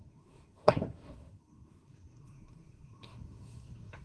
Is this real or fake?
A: fake